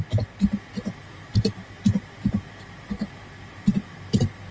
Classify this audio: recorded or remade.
recorded